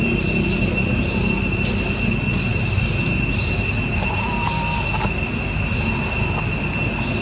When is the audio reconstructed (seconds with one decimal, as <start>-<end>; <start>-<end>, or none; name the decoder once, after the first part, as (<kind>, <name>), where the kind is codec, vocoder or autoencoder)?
none